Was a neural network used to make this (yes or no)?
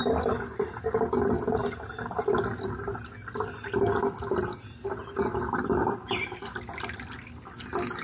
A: no